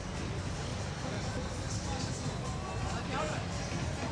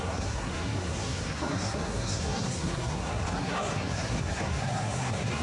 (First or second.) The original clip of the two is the first